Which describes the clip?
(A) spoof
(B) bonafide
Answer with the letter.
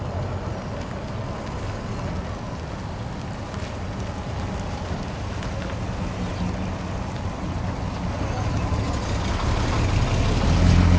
B